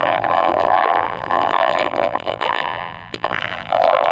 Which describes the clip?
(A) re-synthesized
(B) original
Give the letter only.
A